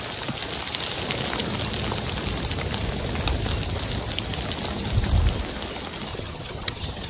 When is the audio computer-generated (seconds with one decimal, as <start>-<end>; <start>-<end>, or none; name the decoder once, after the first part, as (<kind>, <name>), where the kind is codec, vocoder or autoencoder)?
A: 6.1-7.1 (vocoder, HiFi-GAN)

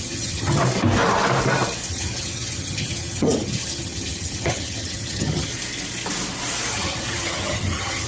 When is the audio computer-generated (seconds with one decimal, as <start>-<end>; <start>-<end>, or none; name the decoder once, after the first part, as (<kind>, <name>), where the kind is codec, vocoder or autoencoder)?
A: 0.0-0.6 (vocoder, HiFi-GAN); 1.9-5.5; 6.7-8.1

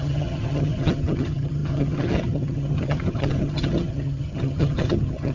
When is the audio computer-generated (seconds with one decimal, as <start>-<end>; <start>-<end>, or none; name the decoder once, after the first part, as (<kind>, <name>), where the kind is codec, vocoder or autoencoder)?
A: 0.0-5.3 (vocoder, HiFi-GAN)

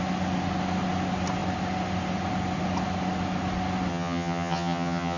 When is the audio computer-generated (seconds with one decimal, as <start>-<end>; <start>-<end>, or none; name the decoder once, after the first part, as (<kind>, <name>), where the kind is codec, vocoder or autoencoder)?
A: 3.9-5.2 (vocoder, HiFi-GAN)

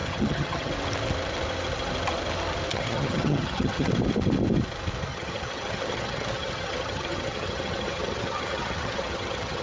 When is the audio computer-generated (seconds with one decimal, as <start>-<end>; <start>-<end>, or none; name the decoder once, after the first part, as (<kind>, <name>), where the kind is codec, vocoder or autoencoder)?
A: 0.0-0.7 (vocoder, HiFi-GAN); 2.7-3.9; 5.1-9.6